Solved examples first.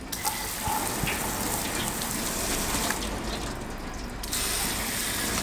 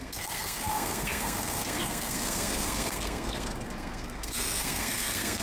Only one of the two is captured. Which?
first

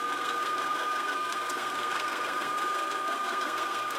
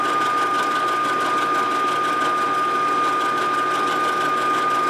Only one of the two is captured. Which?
second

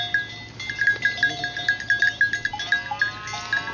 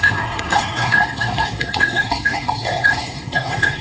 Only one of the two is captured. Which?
first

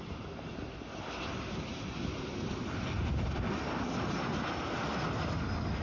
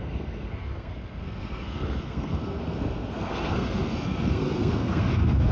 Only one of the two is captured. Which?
first